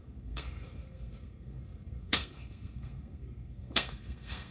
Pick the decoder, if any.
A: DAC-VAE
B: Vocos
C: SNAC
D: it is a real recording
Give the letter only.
C